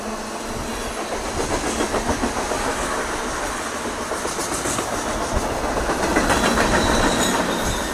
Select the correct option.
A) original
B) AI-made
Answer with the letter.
A